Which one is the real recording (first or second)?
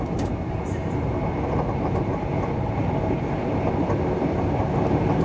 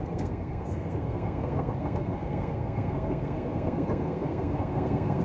first